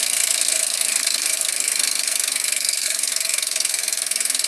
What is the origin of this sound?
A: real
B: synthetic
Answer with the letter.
B